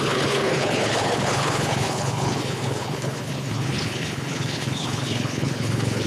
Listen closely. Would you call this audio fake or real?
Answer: fake